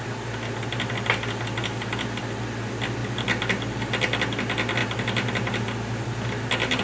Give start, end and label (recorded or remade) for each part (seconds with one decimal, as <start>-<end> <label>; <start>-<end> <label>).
0.0-6.8 recorded